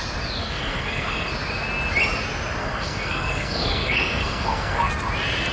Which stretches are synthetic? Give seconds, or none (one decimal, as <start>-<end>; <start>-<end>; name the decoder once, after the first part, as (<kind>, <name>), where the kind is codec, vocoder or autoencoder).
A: 0.4-1.3 (codec, SNAC); 2.6-4.9